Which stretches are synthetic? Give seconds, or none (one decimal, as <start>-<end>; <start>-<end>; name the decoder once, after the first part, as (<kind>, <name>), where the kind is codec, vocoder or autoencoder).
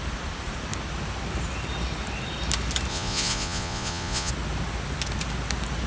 2.9-4.3 (vocoder, Vocos)